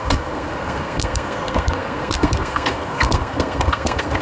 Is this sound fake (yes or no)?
yes